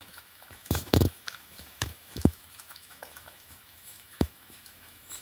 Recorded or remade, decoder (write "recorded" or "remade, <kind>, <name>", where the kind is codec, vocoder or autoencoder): remade, autoencoder, DAC-VAE